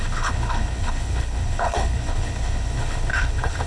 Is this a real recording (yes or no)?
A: no